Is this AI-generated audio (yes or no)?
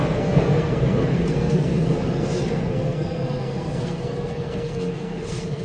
yes